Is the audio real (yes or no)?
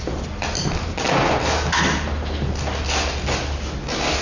yes